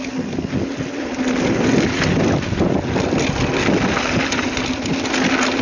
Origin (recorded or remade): recorded